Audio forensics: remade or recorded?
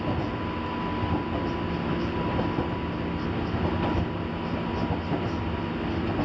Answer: recorded